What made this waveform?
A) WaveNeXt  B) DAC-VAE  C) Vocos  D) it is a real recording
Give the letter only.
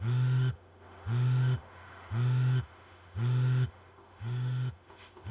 B